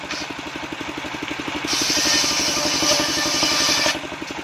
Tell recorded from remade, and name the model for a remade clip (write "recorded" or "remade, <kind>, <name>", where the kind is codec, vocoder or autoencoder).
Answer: recorded